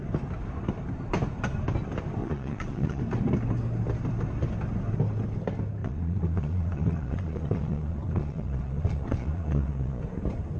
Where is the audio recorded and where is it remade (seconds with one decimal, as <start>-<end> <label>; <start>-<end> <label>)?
0.0-2.2 recorded; 2.2-3.0 remade; 3.0-5.8 recorded; 5.8-10.0 remade; 10.0-10.6 recorded